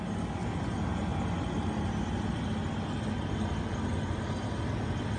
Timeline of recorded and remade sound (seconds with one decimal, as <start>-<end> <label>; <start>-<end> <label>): 0.0-5.2 recorded